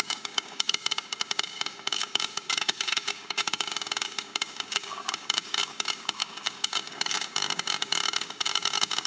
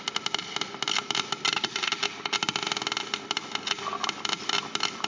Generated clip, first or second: first